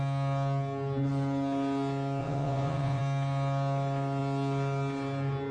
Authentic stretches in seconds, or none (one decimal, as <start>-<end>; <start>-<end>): 0.0-2.2; 3.0-5.5